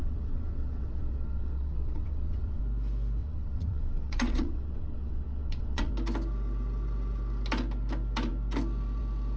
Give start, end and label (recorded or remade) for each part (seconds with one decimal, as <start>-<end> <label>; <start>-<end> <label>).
0.0-2.6 remade; 2.6-3.2 recorded; 3.2-5.9 remade; 5.9-9.4 recorded